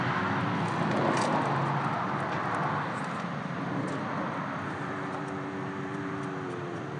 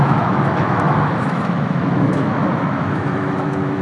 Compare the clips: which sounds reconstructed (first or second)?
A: second